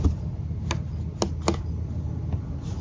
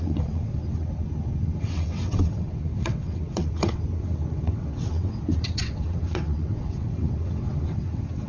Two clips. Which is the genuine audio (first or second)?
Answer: first